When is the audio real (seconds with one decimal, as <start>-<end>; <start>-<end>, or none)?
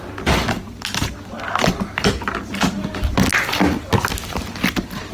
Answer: 0.0-5.1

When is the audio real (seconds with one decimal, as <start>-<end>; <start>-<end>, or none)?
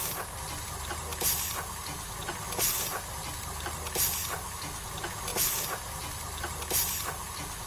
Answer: 0.0-7.7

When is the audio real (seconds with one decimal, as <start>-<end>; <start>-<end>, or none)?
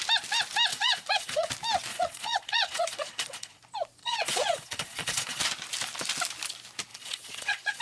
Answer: 0.0-0.7; 1.5-1.9; 3.6-4.0; 5.4-6.9